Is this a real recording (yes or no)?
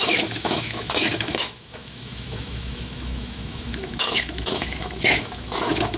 no